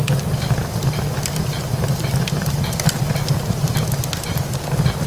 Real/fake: real